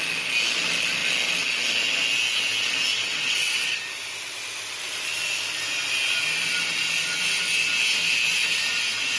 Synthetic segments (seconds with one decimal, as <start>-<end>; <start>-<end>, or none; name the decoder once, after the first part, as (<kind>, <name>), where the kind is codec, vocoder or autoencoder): 2.9-3.8 (vocoder, WaveNeXt)